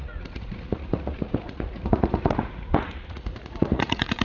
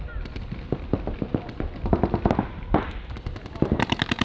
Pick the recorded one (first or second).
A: second